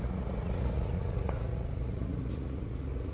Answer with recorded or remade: remade